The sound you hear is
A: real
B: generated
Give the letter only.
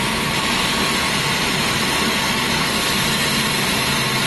A